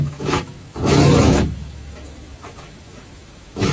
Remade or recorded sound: remade